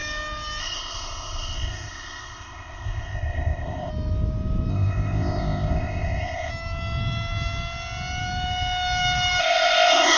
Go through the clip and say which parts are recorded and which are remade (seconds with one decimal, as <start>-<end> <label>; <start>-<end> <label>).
0.0-0.6 recorded; 0.6-3.9 remade; 3.9-4.7 recorded; 4.7-6.5 remade; 6.5-9.4 recorded; 9.4-10.2 remade